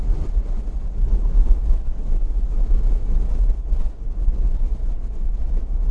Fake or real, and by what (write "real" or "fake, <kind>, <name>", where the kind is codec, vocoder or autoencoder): real